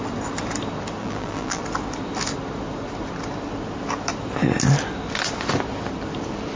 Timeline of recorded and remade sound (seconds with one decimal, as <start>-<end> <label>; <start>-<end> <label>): 0.0-1.0 recorded; 1.0-1.6 remade; 1.6-6.6 recorded